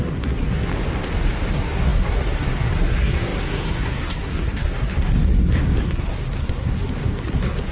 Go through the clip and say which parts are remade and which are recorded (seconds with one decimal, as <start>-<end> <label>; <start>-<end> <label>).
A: 0.0-0.7 remade; 0.7-1.5 recorded; 1.5-7.7 remade